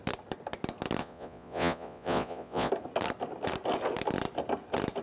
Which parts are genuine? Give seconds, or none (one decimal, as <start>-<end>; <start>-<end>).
0.0-1.0; 2.7-5.0